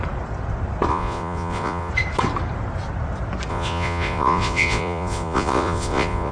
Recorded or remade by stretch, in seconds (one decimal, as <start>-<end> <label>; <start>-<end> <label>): 0.0-0.9 recorded; 0.9-1.9 remade; 1.9-3.5 recorded; 3.5-6.3 remade